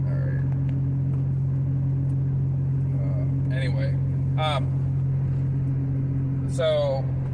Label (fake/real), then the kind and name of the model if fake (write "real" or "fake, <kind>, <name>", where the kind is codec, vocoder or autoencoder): real